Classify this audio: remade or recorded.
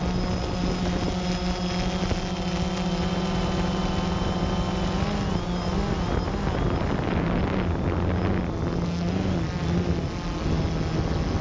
recorded